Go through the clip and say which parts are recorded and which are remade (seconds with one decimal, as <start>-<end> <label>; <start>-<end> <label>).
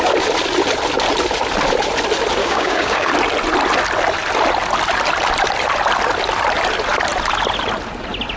0.0-2.4 recorded; 2.4-3.1 remade; 3.1-8.4 recorded